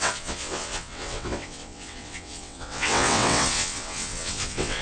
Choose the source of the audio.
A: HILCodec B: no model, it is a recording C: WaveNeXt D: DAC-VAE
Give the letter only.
C